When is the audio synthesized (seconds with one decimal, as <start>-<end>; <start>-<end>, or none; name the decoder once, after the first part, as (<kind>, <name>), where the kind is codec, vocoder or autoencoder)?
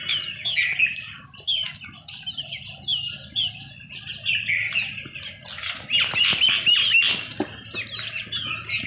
none